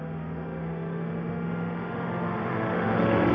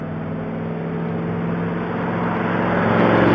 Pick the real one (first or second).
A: second